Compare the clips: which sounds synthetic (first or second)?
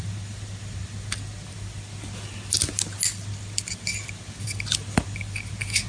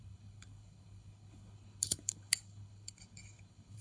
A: second